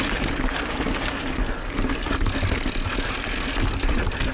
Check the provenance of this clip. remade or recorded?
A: recorded